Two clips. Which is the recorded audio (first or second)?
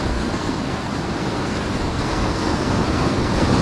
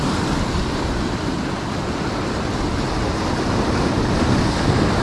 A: second